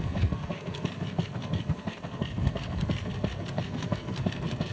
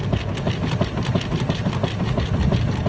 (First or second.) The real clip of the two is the second